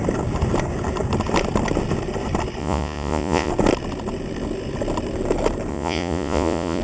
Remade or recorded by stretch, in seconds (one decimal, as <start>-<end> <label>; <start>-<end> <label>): 0.0-2.6 recorded; 2.6-3.5 remade; 3.5-5.7 recorded; 5.7-6.8 remade